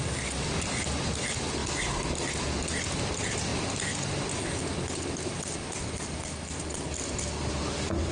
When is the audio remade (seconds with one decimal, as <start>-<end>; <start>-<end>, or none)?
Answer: none